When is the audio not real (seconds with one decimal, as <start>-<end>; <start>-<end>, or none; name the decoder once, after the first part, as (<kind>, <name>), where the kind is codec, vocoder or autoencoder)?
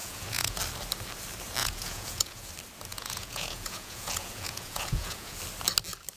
0.0-0.6 (vocoder, Vocos); 1.6-2.5; 2.9-5.4